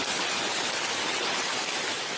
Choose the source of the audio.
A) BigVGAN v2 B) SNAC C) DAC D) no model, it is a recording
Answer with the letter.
D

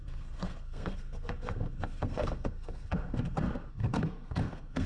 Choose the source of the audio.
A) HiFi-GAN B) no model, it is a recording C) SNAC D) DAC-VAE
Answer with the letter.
C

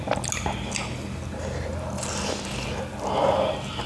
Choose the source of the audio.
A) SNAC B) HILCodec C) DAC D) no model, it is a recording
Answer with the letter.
D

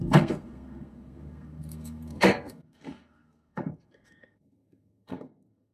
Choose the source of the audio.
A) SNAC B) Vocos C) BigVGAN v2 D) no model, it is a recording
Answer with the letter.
A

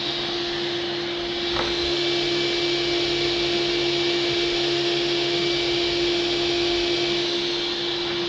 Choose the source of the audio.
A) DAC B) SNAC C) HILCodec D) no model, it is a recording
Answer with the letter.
D